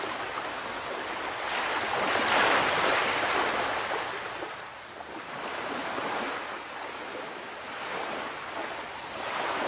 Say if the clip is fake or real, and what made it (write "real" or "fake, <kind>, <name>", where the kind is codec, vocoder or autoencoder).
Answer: real